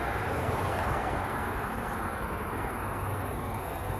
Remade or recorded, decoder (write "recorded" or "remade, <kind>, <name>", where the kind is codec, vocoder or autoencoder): remade, codec, SNAC